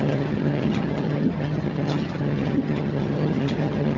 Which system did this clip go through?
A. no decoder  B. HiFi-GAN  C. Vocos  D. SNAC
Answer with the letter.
B